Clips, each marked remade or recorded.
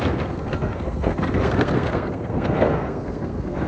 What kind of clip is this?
remade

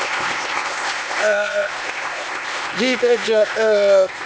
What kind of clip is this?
remade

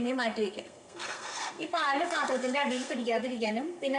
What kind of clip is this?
remade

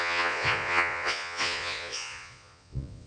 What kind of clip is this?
remade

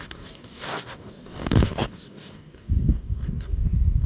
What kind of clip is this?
remade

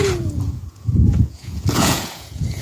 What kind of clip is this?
remade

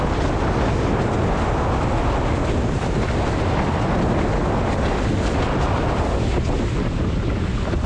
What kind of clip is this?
recorded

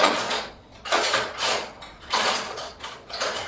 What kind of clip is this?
remade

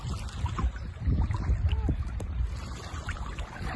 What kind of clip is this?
recorded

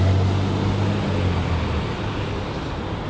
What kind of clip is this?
recorded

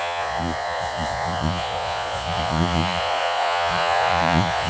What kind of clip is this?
remade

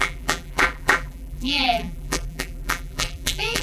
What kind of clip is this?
remade